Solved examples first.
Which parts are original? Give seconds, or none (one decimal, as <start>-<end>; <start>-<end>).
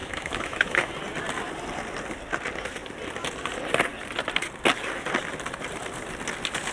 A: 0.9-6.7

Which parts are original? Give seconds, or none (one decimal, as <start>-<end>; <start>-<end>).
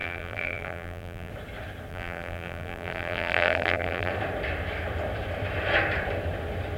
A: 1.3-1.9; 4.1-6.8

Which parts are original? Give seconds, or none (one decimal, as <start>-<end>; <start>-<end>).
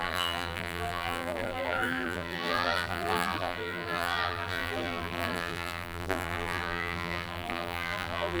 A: none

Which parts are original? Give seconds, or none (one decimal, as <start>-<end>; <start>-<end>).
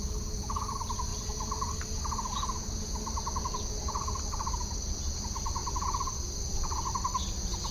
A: 0.0-7.7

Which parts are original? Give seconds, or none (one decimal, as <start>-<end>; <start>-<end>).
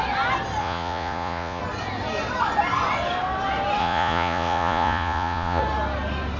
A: 0.0-0.6; 1.6-3.8; 5.6-6.4